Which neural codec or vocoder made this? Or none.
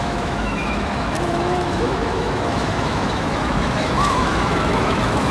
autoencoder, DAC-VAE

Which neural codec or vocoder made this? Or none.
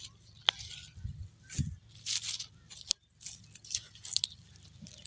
none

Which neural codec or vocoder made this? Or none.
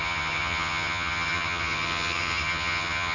vocoder, HiFi-GAN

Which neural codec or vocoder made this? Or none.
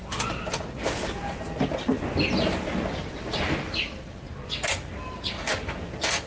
none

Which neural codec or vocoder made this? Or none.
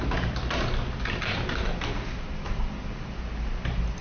none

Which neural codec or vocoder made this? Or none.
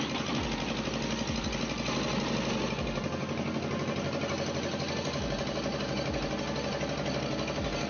none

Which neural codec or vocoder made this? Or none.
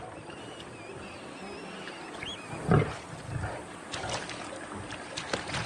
none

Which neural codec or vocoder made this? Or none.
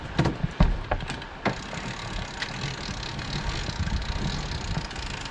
none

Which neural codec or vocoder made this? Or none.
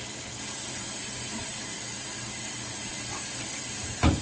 vocoder, BigVGAN v2